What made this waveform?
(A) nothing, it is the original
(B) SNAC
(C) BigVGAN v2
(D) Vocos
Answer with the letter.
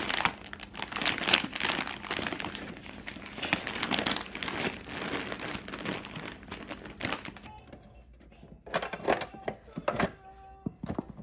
A